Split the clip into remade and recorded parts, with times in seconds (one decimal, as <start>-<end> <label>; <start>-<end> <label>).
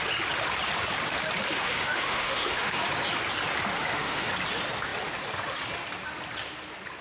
0.0-1.5 recorded; 1.5-2.8 remade; 2.8-3.8 recorded; 3.8-4.3 remade; 4.3-7.0 recorded